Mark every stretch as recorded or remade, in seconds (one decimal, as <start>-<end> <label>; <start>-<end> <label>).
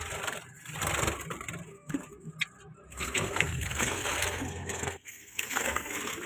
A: 0.0-1.7 recorded; 1.7-2.3 remade; 2.3-2.9 recorded; 2.9-6.3 remade